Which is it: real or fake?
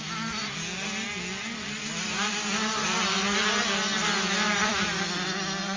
real